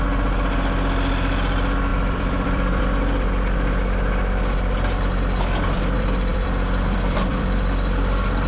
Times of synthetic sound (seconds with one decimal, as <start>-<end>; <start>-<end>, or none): 1.9-2.8; 6.3-8.5